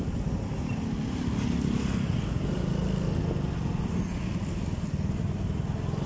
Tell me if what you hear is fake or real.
real